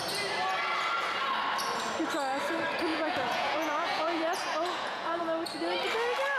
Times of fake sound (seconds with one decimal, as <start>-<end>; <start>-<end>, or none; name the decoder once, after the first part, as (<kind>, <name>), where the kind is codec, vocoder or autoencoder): 2.9-5.2 (vocoder, Vocos)

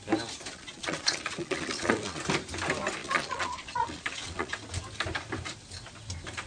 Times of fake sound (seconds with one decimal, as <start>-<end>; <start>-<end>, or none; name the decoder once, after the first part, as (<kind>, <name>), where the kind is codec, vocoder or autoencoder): 0.5-2.2 (vocoder, Vocos); 3.0-4.5

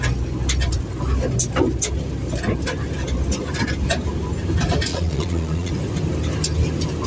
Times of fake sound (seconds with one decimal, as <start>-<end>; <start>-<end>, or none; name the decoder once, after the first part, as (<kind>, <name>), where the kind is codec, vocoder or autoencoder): 4.9-5.7 (vocoder, Vocos)

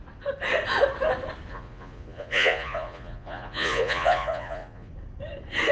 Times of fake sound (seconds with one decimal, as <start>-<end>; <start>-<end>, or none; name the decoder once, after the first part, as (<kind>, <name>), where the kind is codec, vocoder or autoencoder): 1.5-4.9 (vocoder, Vocos)